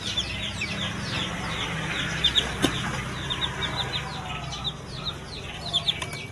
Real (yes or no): no